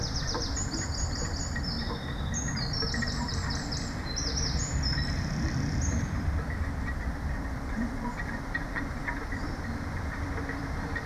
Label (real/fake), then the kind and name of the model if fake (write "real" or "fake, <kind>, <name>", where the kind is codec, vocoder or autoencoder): fake, vocoder, BigVGAN v2